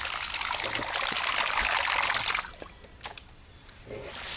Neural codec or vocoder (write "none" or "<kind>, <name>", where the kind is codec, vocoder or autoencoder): none